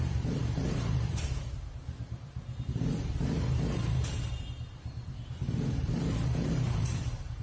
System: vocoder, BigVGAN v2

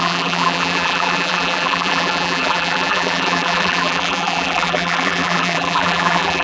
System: vocoder, BigVGAN v2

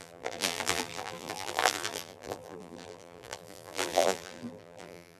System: vocoder, BigVGAN v2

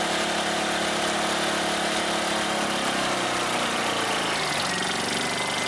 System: none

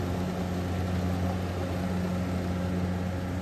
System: none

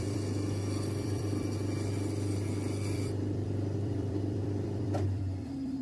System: vocoder, BigVGAN v2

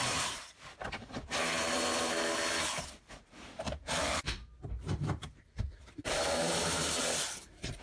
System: vocoder, BigVGAN v2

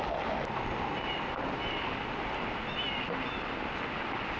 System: none